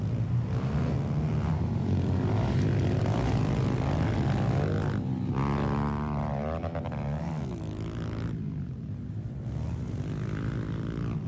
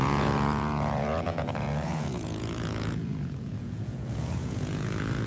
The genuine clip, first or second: first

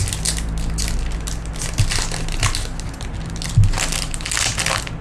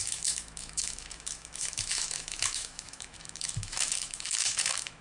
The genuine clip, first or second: first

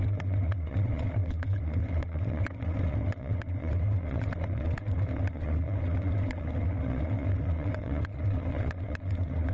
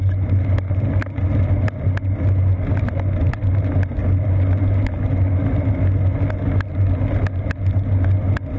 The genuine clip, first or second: second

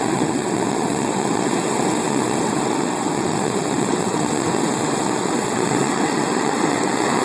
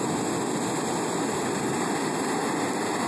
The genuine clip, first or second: second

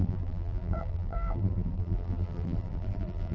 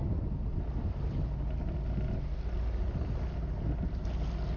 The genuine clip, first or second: second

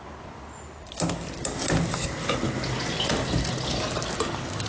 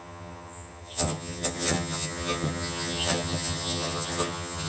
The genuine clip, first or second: first